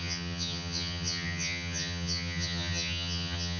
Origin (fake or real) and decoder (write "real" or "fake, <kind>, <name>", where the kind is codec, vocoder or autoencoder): fake, vocoder, HiFi-GAN